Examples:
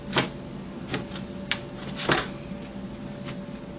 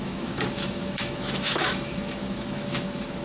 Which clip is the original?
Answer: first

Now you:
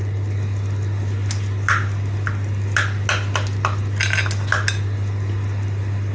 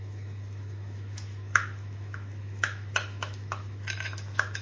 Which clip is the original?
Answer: first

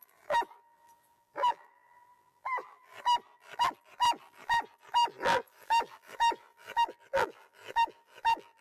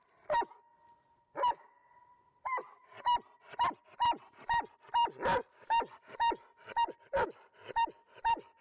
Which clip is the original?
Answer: second